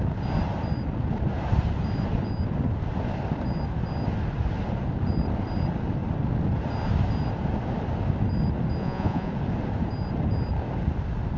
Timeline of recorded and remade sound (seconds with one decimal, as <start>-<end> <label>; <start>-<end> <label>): 0.0-8.8 recorded; 8.8-9.3 remade; 9.3-11.4 recorded